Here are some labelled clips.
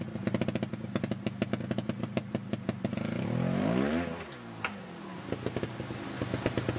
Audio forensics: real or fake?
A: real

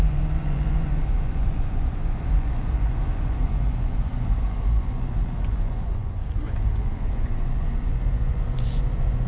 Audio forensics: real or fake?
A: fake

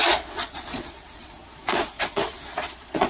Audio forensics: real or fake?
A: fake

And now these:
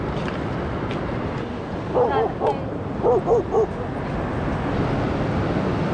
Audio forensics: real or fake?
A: real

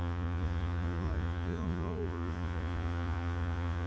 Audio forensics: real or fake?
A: fake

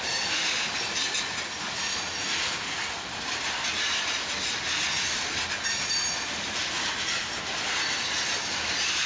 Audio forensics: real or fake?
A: real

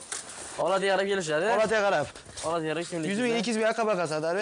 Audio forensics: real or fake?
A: real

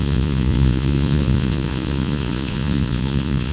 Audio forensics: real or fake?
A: fake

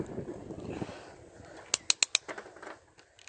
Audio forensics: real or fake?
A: real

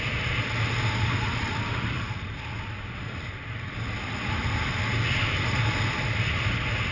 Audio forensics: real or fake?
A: real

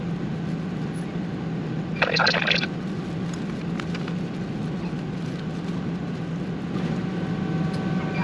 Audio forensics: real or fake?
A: real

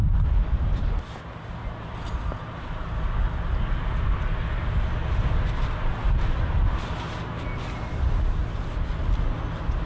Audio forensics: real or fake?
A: real